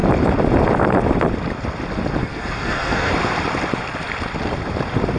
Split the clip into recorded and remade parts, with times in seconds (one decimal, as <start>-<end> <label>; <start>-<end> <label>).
0.0-2.2 recorded; 2.2-3.1 remade; 3.1-5.2 recorded